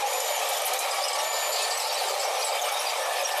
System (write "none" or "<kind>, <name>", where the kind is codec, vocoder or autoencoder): none